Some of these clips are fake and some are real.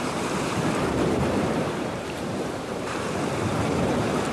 fake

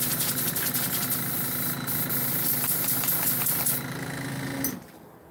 real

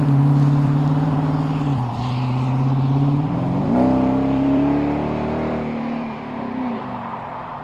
fake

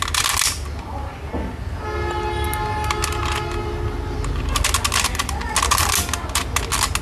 real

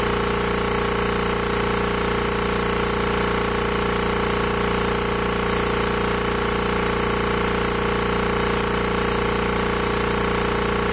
real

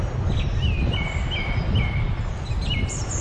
real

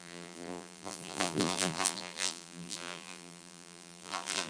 fake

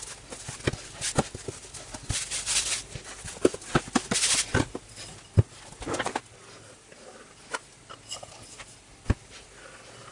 real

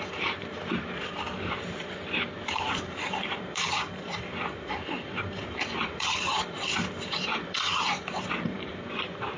fake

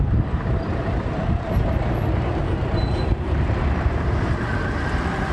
fake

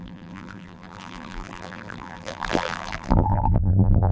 fake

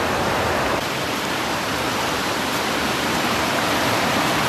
fake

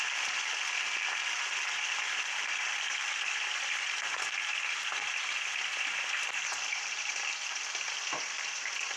real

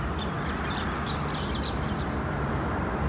real